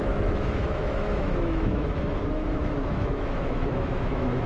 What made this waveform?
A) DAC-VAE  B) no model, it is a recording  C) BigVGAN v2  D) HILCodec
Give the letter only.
A